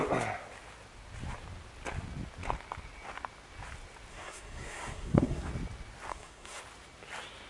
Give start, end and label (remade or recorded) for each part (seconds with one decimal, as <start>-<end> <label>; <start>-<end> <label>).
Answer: 0.0-4.1 recorded; 4.1-5.5 remade; 5.5-6.1 recorded; 6.1-6.6 remade; 6.6-7.5 recorded